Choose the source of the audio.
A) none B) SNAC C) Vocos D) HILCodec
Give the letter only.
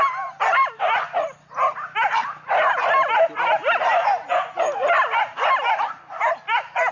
A